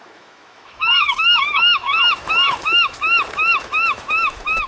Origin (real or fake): fake